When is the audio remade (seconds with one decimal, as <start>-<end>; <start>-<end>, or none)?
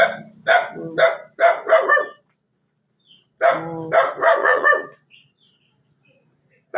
4.4-6.8